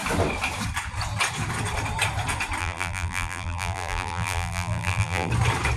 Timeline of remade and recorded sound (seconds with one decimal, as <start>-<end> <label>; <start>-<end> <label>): 0.0-2.6 recorded; 2.6-5.3 remade; 5.3-5.8 recorded